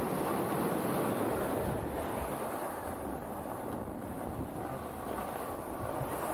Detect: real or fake real